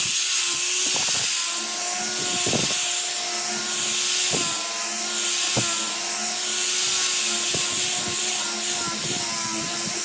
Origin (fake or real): real